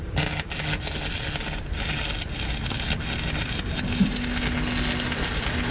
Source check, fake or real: real